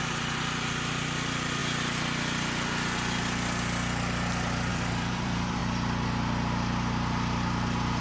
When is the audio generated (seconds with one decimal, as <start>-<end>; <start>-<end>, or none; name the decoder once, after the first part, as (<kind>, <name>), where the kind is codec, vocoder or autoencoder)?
0.0-1.6 (vocoder, BigVGAN v2); 4.7-5.6